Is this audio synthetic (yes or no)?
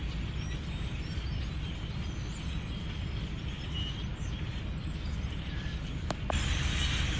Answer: no